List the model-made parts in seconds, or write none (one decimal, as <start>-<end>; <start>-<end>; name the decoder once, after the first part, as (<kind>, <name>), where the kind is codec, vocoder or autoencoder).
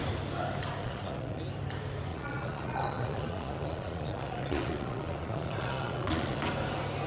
0.8-1.4 (vocoder, Vocos); 2.1-6.4